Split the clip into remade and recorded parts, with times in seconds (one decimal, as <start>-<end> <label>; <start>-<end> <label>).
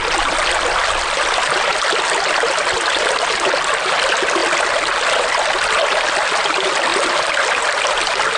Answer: 0.0-8.4 recorded